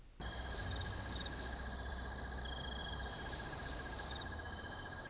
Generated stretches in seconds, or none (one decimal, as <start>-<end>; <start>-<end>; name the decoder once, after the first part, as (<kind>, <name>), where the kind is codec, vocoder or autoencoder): 2.8-5.1 (vocoder, BigVGAN v2)